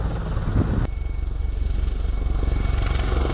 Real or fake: real